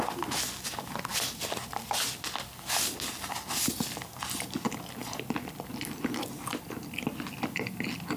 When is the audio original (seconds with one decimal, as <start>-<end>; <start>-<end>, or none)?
0.0-8.2